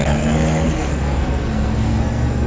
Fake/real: fake